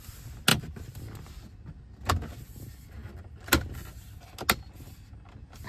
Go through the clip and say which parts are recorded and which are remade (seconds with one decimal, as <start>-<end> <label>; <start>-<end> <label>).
0.0-0.5 recorded; 0.5-1.3 remade; 1.3-3.0 recorded; 3.0-4.3 remade; 4.3-5.7 recorded